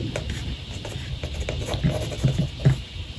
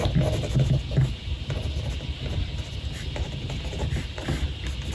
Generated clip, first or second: first